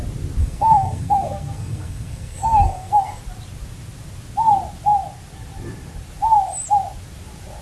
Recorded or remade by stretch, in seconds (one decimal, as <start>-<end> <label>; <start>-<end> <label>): 0.0-0.4 recorded; 0.4-3.2 remade; 3.2-7.6 recorded